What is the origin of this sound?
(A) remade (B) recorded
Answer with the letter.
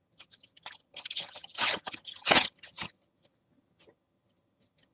A